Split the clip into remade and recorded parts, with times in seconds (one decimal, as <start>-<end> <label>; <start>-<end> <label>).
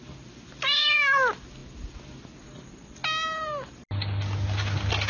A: 0.0-5.1 recorded